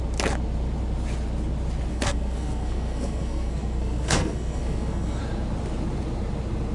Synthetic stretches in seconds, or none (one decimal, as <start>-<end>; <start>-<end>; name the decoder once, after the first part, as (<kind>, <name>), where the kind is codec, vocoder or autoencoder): 1.9-5.2 (codec, SNAC)